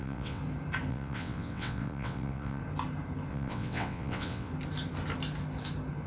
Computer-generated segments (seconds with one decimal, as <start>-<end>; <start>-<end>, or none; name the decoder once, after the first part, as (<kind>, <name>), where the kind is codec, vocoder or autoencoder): 0.0-0.4 (vocoder, WaveNeXt); 0.9-2.6; 3.3-4.5